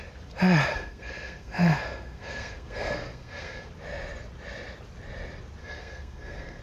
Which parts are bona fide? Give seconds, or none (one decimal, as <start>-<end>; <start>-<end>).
0.0-0.7; 3.7-5.6